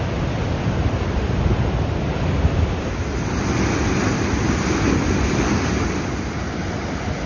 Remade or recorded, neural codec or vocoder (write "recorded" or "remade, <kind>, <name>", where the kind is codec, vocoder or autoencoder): recorded